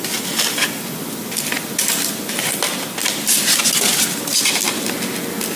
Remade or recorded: recorded